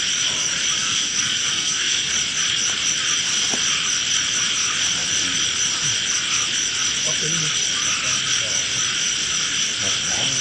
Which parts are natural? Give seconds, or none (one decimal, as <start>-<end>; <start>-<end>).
0.0-0.8; 2.1-10.4